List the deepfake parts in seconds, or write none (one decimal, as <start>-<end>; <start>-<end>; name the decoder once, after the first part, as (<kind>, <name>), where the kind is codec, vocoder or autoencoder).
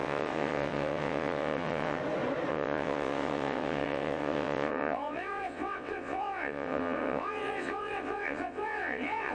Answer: 0.0-2.0 (vocoder, WaveNeXt); 2.5-9.3